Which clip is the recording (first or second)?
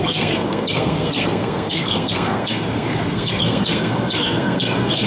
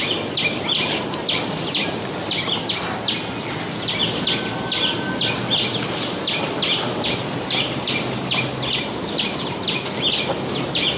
second